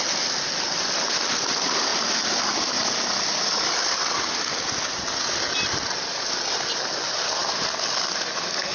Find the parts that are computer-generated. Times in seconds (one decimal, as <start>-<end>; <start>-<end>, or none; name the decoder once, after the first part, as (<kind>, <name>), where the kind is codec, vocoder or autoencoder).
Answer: none